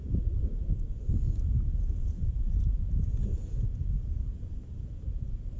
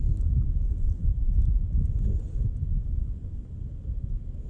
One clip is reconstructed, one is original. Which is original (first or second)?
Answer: second